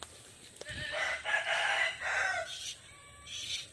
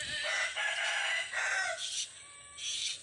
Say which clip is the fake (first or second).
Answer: first